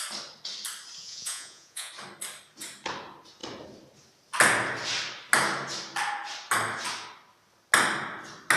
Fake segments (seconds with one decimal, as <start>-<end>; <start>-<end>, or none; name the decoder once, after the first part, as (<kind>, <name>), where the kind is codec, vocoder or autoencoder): 1.0-1.9 (vocoder, Vocos)